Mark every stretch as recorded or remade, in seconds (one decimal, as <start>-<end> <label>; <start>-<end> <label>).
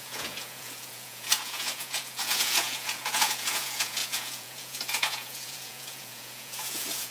0.0-7.1 remade